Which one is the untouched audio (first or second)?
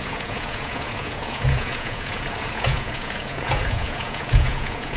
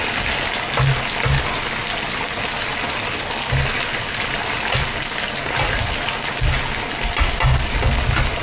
second